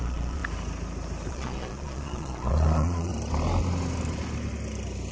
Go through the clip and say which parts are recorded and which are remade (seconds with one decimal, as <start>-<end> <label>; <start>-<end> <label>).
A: 0.0-0.4 remade; 0.4-1.3 recorded; 1.3-3.1 remade; 3.1-5.1 recorded